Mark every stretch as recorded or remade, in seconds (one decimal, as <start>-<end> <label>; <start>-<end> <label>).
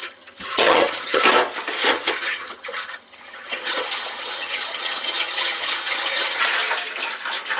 0.0-1.2 remade; 1.2-1.8 recorded; 1.8-6.4 remade; 6.4-7.6 recorded